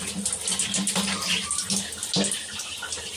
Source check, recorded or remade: recorded